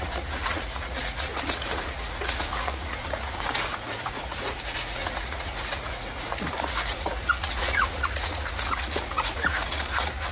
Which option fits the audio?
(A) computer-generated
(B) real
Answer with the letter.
A